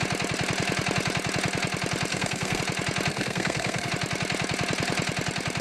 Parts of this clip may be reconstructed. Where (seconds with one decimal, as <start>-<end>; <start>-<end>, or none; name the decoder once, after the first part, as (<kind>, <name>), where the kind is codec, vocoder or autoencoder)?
2.1-2.6 (codec, SNAC); 3.1-3.9

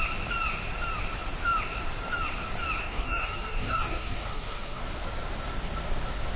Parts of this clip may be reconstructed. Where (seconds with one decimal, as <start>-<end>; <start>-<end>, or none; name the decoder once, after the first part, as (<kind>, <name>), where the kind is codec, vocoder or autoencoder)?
2.8-4.8 (codec, DAC)

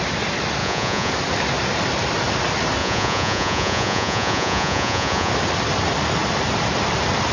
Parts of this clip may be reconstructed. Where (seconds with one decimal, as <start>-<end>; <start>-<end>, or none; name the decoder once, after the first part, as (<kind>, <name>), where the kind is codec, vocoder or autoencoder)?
0.6-1.1 (vocoder, Vocos); 2.8-5.3

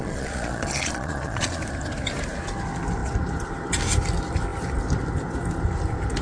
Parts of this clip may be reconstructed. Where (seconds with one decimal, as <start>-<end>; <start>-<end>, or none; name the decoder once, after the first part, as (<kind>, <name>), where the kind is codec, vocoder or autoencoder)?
0.0-1.6 (vocoder, Vocos)

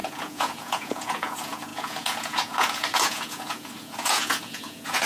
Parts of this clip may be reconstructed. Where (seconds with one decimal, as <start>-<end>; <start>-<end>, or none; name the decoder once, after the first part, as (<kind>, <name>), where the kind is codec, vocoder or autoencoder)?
0.0-5.1 (vocoder, Vocos)

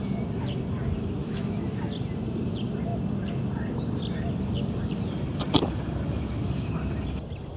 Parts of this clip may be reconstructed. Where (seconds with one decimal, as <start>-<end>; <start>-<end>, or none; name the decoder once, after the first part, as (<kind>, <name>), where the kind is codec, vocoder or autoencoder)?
1.2-1.8 (autoencoder, DAC-VAE)

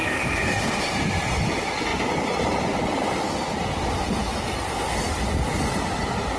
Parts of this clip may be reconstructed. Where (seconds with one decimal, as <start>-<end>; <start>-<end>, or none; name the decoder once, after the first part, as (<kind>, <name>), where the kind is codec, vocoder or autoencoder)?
0.0-0.8 (codec, DAC)